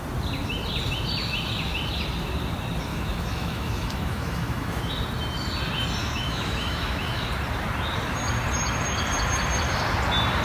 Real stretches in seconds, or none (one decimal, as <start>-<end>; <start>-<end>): 0.0-2.9; 4.9-6.0; 7.3-10.4